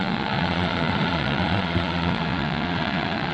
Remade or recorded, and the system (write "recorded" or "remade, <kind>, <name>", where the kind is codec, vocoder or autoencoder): remade, vocoder, Vocos